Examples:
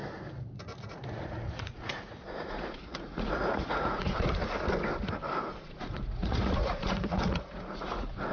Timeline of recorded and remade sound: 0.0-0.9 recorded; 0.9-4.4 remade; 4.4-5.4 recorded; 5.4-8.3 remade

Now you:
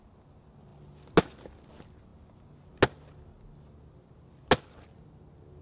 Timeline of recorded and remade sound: 0.0-5.6 recorded

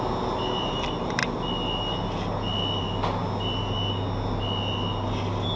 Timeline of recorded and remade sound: 0.0-5.6 recorded

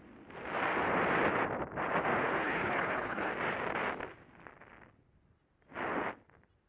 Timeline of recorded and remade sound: 0.0-2.4 recorded; 2.4-3.3 remade; 3.3-6.7 recorded

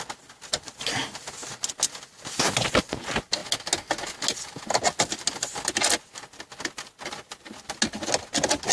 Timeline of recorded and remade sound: 0.0-8.7 recorded

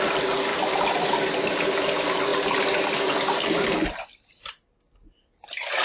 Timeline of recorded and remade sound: 0.0-5.8 recorded